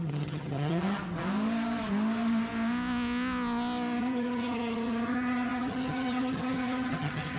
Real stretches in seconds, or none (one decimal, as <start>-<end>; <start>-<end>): 1.0-4.0